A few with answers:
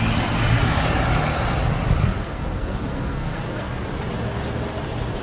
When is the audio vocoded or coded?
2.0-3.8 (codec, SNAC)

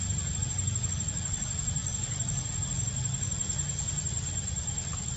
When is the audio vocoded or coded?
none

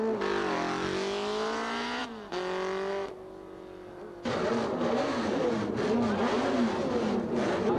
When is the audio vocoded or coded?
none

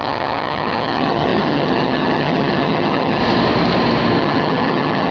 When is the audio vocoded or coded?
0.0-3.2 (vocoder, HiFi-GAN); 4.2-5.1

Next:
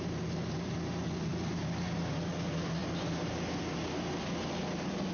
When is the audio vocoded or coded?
none